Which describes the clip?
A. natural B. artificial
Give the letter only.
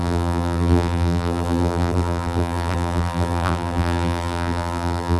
B